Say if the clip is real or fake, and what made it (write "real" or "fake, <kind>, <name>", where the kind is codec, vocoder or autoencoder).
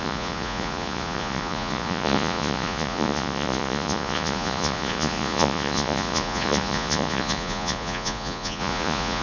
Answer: fake, vocoder, Vocos